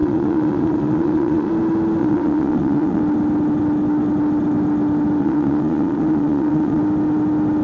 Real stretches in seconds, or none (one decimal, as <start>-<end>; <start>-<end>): 1.5-2.0; 3.0-5.2; 6.8-7.6